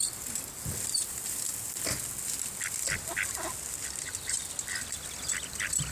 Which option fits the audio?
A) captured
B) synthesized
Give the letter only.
A